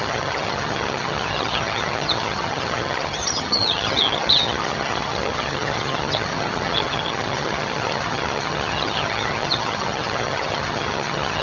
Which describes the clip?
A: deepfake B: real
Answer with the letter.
A